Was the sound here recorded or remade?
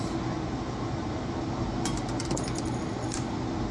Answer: recorded